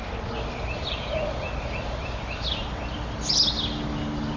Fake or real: real